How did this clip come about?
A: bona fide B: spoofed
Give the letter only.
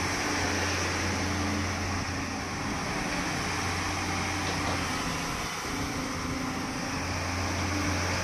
A